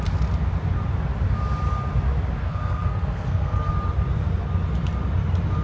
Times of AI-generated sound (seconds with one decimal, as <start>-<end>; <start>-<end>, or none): 2.4-3.7